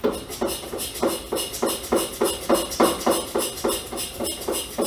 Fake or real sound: real